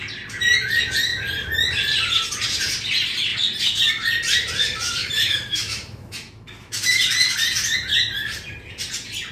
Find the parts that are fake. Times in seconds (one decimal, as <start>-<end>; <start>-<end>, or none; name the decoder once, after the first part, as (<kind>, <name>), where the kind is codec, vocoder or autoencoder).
5.0-6.9 (autoencoder, DAC-VAE)